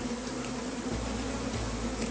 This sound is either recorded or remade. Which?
recorded